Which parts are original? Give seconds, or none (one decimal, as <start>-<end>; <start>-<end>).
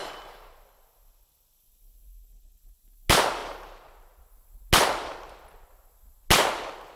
0.6-3.4; 4.2-7.0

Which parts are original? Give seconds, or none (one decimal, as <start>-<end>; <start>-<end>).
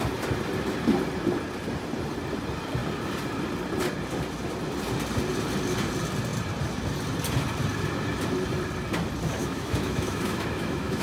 0.0-9.4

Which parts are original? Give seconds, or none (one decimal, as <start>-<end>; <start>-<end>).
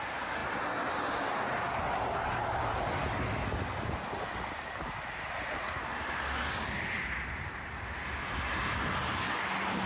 0.0-9.9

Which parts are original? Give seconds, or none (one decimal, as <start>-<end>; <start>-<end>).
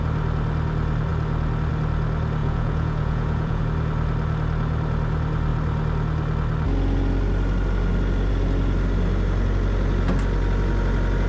0.0-2.4; 3.6-11.3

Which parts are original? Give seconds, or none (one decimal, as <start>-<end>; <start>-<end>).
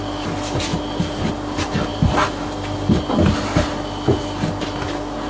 0.0-0.7; 1.3-1.9; 3.0-5.3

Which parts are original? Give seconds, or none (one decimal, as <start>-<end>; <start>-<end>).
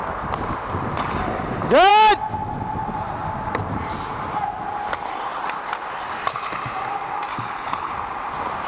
0.0-7.3; 7.9-8.7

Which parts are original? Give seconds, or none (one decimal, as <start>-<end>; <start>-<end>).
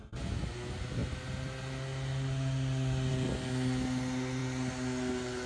0.0-5.5